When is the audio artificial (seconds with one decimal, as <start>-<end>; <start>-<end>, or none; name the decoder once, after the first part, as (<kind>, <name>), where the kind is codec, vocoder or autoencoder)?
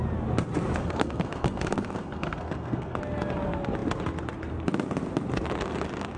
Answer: 0.8-3.0 (codec, SNAC)